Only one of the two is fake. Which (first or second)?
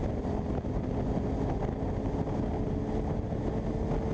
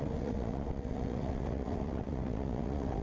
second